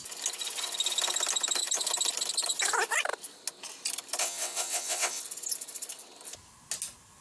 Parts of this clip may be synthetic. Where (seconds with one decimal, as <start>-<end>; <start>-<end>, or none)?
4.2-5.2